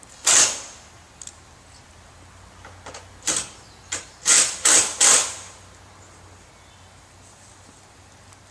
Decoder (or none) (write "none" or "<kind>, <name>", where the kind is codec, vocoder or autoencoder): none